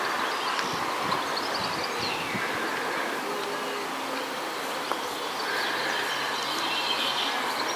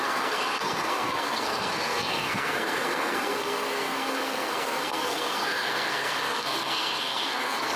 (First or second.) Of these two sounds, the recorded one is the first